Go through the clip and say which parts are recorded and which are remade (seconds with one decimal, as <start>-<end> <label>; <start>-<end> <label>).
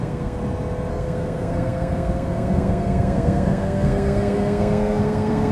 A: 0.0-0.4 remade; 0.4-0.9 recorded; 0.9-5.5 remade